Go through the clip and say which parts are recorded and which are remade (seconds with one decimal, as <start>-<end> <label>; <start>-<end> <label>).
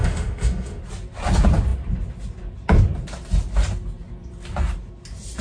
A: 0.0-0.8 remade; 0.8-5.4 recorded